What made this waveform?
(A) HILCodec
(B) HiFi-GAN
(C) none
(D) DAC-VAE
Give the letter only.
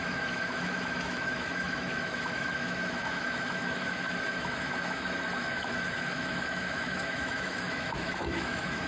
D